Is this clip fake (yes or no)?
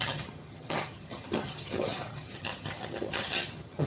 yes